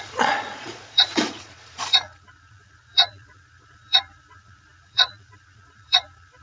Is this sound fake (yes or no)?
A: yes